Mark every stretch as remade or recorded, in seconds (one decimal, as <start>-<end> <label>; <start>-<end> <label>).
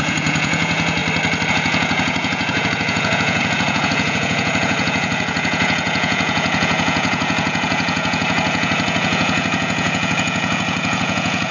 0.0-1.0 remade; 1.0-1.5 recorded; 1.5-11.5 remade